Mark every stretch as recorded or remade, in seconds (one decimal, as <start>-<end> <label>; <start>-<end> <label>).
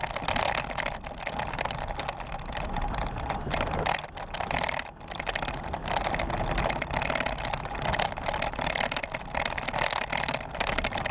0.0-11.1 recorded